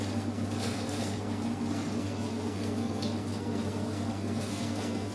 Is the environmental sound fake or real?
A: fake